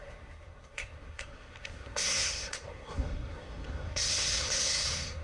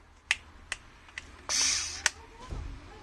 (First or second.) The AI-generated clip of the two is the first